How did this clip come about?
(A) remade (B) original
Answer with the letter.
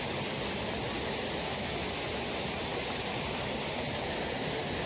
B